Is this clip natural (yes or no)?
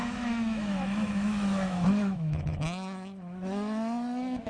no